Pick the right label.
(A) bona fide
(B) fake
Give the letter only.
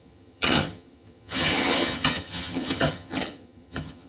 B